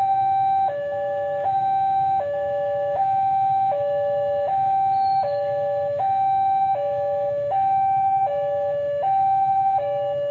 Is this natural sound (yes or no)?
no